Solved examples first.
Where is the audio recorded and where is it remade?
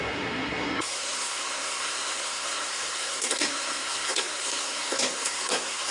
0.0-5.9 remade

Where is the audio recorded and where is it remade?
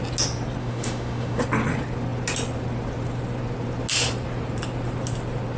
0.0-0.6 recorded; 0.6-1.4 remade; 1.4-5.6 recorded